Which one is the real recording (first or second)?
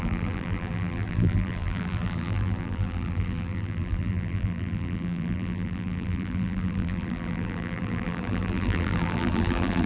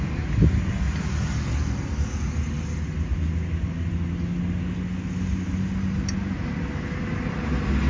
second